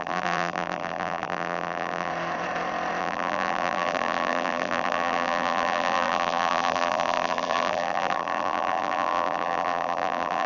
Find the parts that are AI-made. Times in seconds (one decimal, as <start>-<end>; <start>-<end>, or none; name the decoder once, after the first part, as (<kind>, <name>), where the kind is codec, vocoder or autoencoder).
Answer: 0.0-2.1 (vocoder, BigVGAN v2); 3.0-10.5